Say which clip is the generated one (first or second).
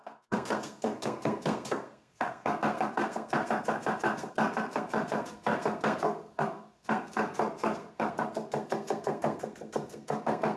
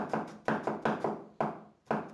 first